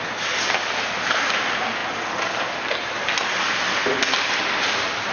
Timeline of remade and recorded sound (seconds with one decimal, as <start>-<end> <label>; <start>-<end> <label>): 0.0-5.1 recorded